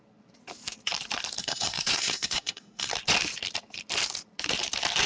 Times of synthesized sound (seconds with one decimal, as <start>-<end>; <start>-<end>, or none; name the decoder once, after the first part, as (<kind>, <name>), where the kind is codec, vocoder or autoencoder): 1.4-2.9 (codec, SNAC)